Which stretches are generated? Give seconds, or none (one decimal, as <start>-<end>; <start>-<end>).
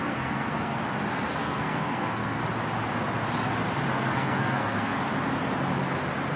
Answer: 0.0-0.8; 1.4-2.4; 3.9-5.0